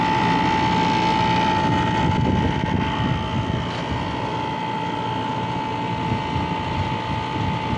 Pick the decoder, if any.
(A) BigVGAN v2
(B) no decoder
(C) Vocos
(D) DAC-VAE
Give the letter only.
B